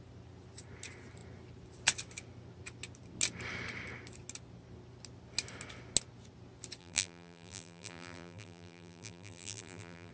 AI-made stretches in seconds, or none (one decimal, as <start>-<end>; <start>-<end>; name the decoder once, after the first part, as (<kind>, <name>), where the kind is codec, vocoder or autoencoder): 6.8-10.1 (vocoder, BigVGAN v2)